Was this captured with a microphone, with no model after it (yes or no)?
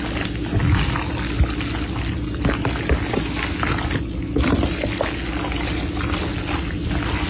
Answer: yes